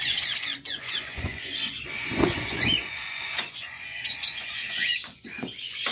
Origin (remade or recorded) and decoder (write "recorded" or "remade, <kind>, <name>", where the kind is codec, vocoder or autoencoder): remade, vocoder, Vocos